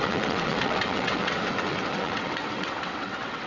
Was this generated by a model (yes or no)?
yes